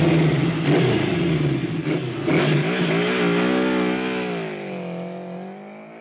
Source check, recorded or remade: recorded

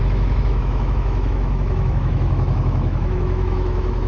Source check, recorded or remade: remade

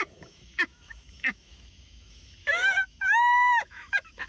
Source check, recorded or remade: remade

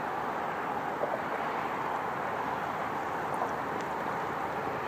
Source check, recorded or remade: recorded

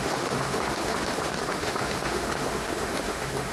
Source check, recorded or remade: remade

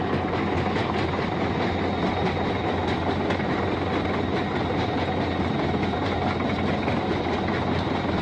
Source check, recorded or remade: recorded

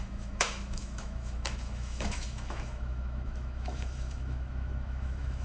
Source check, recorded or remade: remade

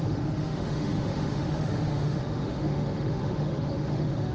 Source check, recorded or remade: remade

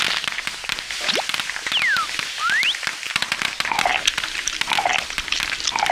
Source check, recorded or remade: recorded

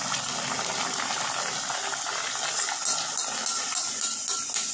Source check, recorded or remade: recorded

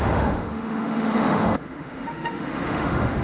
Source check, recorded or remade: remade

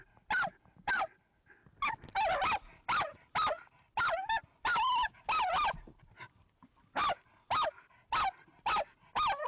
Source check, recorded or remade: recorded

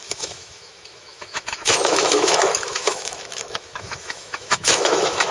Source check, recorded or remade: remade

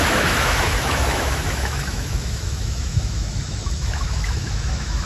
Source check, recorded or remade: remade